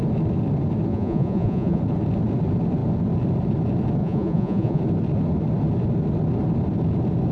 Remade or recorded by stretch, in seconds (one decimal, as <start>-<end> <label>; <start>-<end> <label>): 0.0-0.9 recorded; 0.9-1.8 remade; 1.8-4.0 recorded; 4.0-4.8 remade; 4.8-7.3 recorded